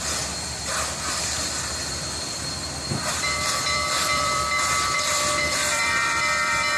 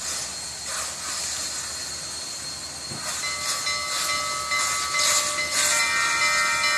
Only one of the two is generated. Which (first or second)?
first